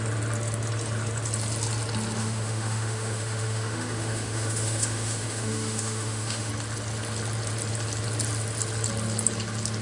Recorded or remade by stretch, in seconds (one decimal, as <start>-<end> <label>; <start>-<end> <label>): 0.0-2.2 recorded; 2.2-6.5 remade; 6.5-9.8 recorded